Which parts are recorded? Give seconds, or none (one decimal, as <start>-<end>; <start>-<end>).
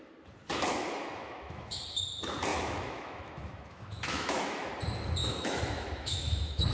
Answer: 0.0-0.7; 1.8-2.5; 4.7-5.2